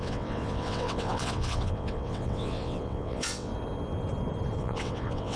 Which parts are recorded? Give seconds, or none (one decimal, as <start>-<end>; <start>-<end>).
3.5-4.6